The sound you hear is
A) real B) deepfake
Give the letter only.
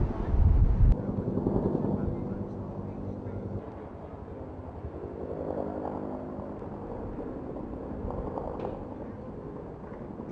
A